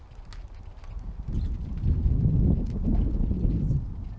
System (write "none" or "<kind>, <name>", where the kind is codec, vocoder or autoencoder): none